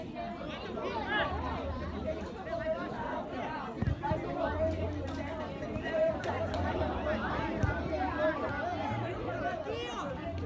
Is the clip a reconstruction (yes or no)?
no